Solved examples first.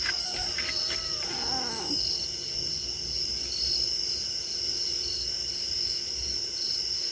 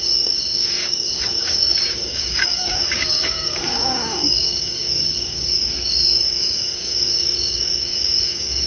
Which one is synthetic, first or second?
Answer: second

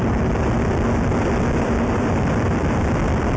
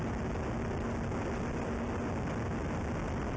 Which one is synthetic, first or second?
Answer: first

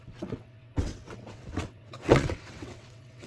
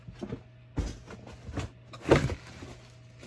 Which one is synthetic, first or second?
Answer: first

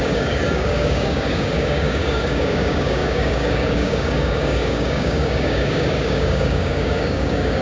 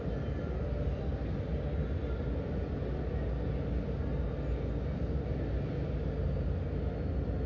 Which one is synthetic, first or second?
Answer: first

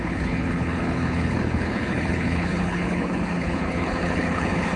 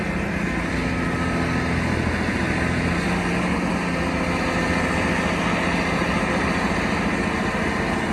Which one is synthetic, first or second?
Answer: first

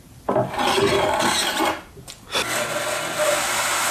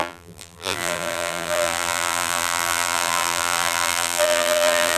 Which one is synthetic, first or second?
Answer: second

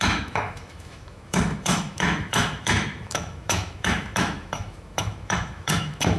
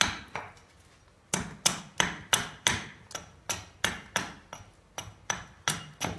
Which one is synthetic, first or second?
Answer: first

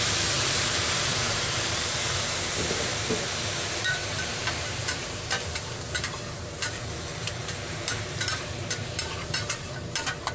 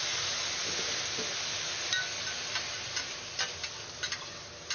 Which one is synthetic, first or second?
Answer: first